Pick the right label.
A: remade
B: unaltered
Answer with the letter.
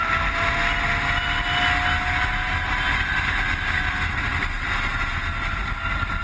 B